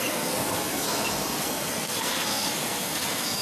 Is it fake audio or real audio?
fake